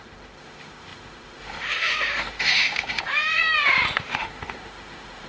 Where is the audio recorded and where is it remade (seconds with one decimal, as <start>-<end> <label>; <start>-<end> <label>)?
0.0-3.4 remade; 3.4-4.0 recorded; 4.0-5.3 remade